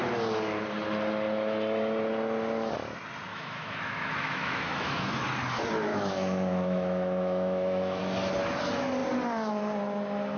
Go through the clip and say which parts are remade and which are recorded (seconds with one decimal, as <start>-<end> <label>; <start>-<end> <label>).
0.0-3.3 recorded; 3.3-5.2 remade; 5.2-5.9 recorded; 5.9-8.0 remade; 8.0-10.4 recorded